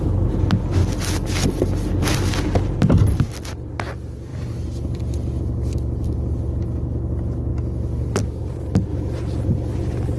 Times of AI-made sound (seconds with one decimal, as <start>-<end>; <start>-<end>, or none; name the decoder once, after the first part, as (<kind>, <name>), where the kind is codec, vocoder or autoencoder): none

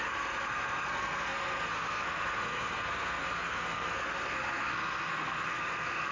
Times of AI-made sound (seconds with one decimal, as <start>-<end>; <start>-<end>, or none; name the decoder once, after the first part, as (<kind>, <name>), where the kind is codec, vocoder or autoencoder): 0.0-6.1 (codec, SNAC)

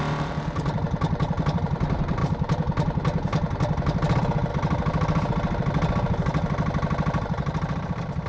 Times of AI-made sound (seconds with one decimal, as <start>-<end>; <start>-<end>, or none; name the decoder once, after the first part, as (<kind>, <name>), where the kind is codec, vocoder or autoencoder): none

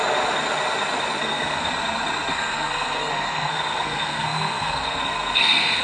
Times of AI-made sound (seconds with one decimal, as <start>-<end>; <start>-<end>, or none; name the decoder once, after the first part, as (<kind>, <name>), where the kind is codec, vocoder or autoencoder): 1.2-1.7 (codec, SNAC); 2.3-5.8

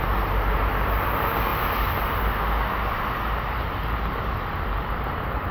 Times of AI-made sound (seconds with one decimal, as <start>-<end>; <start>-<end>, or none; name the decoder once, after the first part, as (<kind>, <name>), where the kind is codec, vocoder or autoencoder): none

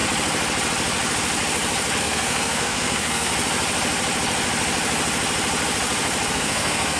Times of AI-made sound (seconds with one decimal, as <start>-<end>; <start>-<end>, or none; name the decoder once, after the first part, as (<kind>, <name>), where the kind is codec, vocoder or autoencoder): 2.0-3.3 (codec, SNAC); 6.3-7.0

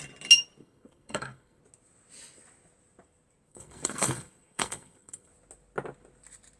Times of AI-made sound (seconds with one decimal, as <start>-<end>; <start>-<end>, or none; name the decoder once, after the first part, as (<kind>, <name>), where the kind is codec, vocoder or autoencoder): 0.6-1.6 (codec, SNAC); 3.5-5.3

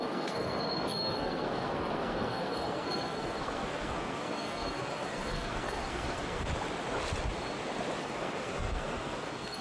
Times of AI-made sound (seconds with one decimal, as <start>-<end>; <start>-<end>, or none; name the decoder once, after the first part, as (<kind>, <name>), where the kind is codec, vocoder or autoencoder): 0.0-6.5 (codec, SNAC); 8.0-9.6